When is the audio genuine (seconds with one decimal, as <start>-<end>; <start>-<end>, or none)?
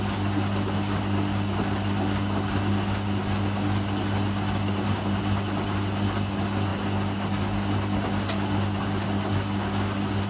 0.0-10.3